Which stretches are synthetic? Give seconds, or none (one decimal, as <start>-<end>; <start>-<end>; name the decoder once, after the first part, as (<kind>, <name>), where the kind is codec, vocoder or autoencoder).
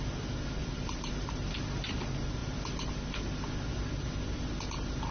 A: 0.6-1.5 (vocoder, BigVGAN v2)